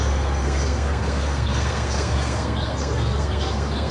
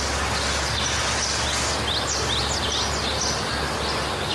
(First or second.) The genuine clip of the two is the second